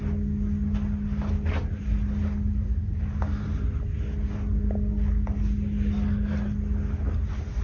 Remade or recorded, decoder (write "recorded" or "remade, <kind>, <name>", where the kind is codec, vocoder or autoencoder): recorded